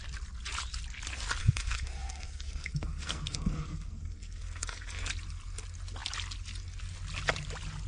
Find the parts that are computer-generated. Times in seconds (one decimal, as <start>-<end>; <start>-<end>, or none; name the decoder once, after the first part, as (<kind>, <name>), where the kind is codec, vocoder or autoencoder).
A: 1.4-5.1 (codec, SNAC)